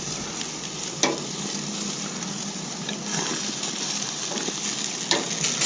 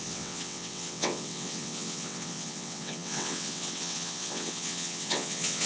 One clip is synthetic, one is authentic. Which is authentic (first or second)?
first